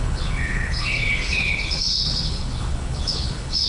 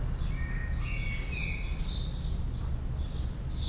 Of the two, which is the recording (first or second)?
second